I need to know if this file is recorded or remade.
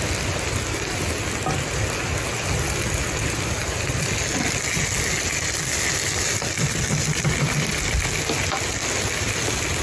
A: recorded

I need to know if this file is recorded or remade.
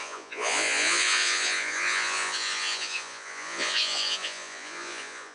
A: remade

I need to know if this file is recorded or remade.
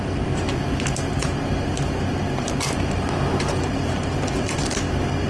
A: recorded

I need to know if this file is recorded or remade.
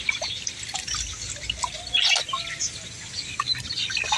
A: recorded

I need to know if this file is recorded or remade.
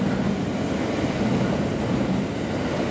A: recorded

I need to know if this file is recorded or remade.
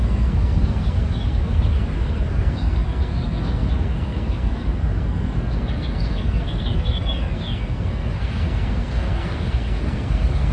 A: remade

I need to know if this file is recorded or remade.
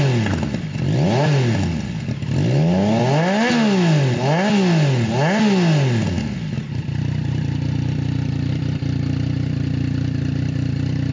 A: recorded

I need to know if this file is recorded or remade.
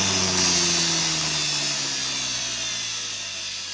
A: recorded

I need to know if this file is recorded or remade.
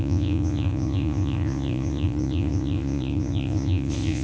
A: remade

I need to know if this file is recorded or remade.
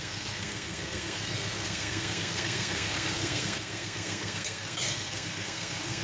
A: remade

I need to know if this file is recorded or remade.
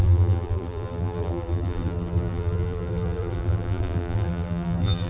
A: remade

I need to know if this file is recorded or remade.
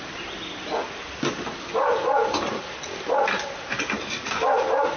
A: recorded